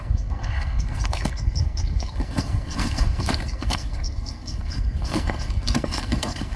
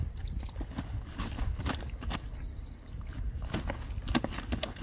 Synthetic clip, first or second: first